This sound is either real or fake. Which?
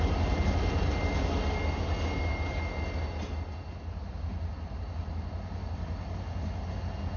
real